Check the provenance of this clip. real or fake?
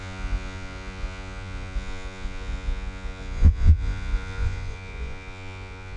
fake